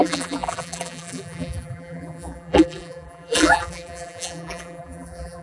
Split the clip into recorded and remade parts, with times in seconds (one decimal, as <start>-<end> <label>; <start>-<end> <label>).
0.0-5.4 remade